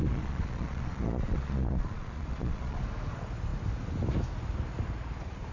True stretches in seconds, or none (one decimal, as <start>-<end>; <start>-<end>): 2.8-5.5